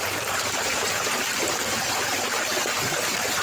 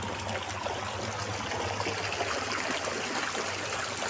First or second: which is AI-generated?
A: first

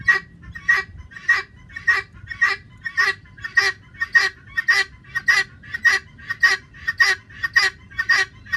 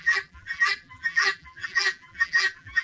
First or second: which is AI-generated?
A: second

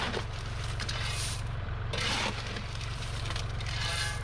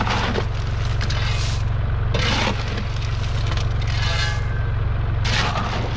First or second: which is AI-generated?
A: first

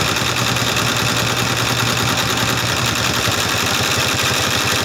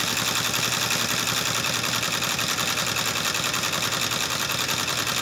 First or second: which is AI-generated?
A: first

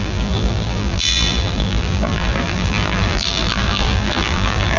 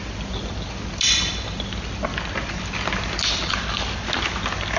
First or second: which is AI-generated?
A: first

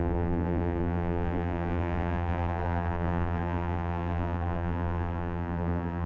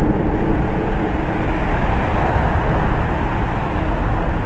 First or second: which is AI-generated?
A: first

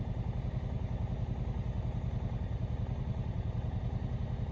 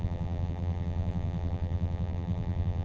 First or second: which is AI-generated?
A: second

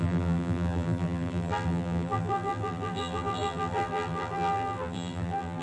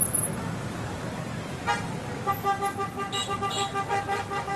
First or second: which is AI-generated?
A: first